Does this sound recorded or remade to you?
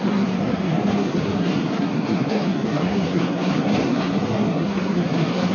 remade